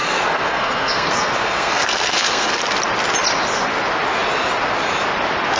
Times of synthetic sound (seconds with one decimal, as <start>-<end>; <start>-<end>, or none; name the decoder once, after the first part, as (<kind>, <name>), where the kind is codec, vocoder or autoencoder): 0.0-2.6 (codec, SNAC)